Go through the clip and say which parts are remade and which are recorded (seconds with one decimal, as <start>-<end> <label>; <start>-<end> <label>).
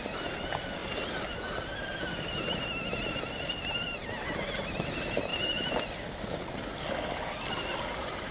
0.0-5.3 recorded; 5.3-7.8 remade; 7.8-8.3 recorded